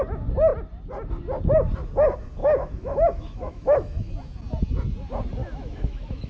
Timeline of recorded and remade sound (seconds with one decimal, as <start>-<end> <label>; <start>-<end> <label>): 0.0-2.4 recorded; 2.4-4.1 remade; 4.1-5.4 recorded; 5.4-6.3 remade